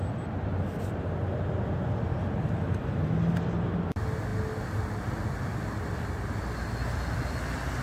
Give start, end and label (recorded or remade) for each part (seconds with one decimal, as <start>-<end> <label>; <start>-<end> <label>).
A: 0.0-7.8 recorded